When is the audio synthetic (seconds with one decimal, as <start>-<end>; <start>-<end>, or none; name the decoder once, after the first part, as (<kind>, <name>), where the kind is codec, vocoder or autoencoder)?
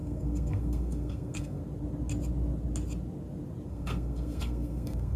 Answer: 0.0-1.6 (codec, SNAC); 3.7-5.2